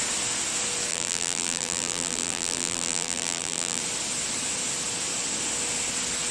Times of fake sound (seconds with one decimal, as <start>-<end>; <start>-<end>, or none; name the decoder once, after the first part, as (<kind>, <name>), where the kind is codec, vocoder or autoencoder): 0.9-3.8 (vocoder, BigVGAN v2)